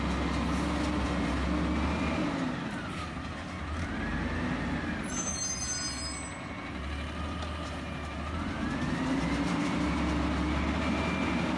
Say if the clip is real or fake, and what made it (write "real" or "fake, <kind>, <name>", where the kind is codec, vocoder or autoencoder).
real